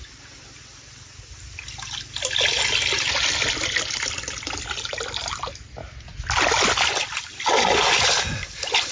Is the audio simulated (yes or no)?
no